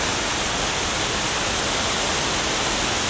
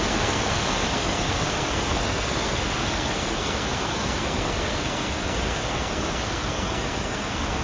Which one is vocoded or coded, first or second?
second